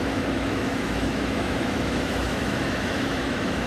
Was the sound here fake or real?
fake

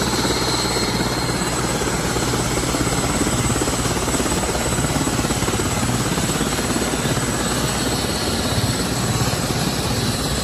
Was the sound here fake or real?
real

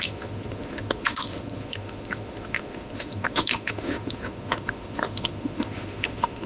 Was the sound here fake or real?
fake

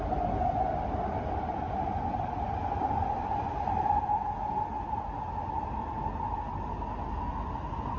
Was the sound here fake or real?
real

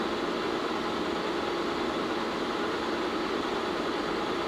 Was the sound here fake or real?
real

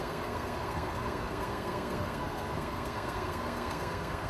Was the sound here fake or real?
fake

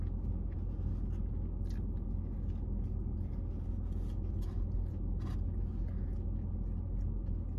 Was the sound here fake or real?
real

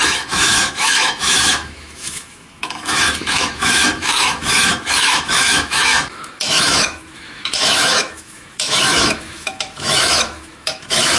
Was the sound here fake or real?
fake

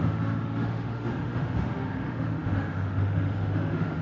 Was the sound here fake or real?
fake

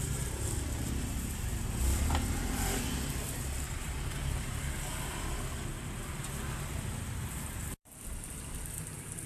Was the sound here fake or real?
fake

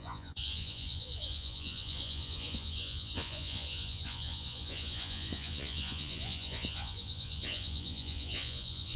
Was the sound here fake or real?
fake